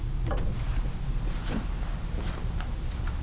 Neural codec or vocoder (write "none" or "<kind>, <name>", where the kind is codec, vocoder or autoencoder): none